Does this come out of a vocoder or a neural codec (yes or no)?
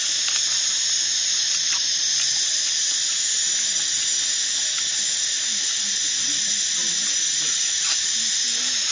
yes